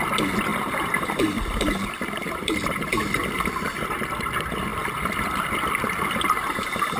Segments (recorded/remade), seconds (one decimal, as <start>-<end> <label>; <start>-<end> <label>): 0.0-0.5 recorded; 0.5-4.2 remade; 4.2-4.7 recorded; 4.7-6.1 remade; 6.1-7.0 recorded

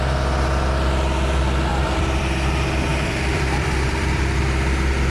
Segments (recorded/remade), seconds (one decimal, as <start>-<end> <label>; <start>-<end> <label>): 0.0-1.7 recorded; 1.7-2.2 remade; 2.2-2.9 recorded; 2.9-4.4 remade; 4.4-5.1 recorded

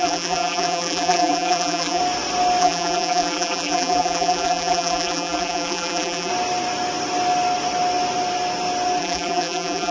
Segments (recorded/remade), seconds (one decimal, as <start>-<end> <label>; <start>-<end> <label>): 0.0-2.0 remade; 2.0-2.6 recorded; 2.6-6.3 remade; 6.3-9.0 recorded; 9.0-9.9 remade